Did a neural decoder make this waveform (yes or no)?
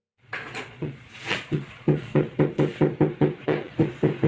yes